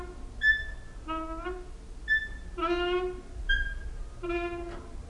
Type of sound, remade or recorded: recorded